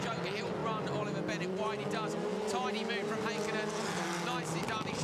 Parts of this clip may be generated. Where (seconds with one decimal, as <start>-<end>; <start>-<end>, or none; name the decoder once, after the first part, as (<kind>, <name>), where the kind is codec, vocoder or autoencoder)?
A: none